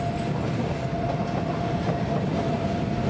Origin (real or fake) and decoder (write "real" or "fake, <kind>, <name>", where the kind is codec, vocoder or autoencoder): real